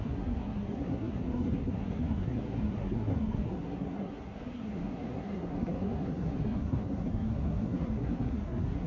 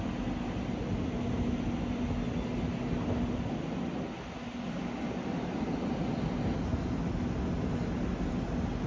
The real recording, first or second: second